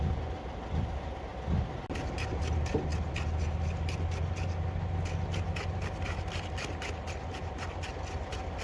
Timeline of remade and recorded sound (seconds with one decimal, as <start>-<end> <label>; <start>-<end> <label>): 0.0-8.6 recorded